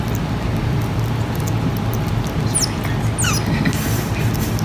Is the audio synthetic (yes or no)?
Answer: no